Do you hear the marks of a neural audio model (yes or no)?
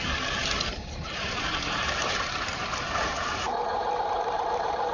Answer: yes